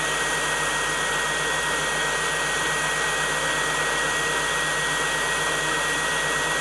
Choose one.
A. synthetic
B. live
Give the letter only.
B